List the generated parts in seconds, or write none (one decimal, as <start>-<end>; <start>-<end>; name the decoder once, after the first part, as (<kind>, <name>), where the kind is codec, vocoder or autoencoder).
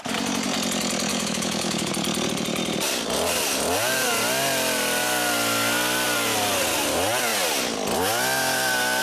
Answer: 1.1-1.9 (autoencoder, DAC-VAE)